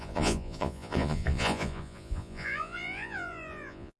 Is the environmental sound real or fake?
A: fake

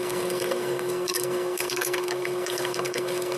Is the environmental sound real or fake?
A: fake